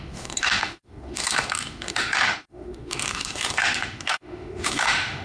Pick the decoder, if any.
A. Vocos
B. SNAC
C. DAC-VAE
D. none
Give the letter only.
C